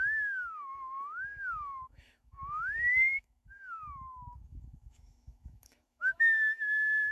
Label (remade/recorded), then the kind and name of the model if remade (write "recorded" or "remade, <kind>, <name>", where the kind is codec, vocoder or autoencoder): remade, autoencoder, DAC-VAE